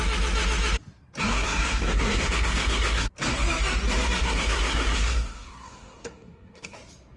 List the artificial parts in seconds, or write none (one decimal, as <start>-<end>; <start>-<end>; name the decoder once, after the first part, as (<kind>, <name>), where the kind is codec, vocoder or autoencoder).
1.2-3.1 (codec, SNAC); 4.2-6.8